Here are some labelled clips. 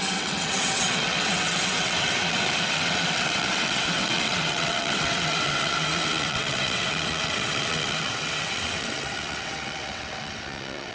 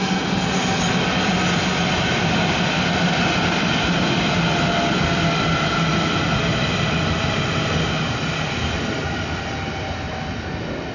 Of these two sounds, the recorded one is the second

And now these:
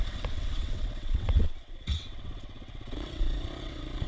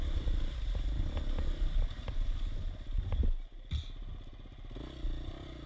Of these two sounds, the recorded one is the second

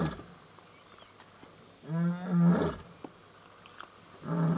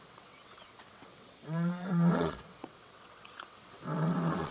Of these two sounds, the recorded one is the first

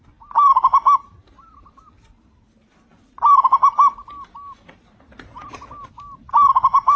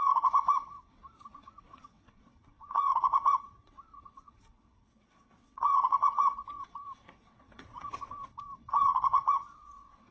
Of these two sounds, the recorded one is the first